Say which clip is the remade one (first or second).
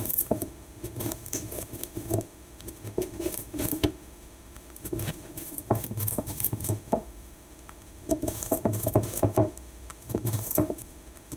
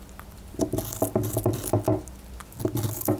first